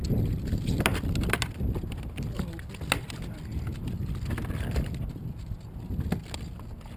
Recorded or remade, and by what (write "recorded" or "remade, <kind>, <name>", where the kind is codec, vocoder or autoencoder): recorded